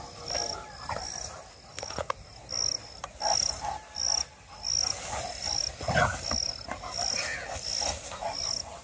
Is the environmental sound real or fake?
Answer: real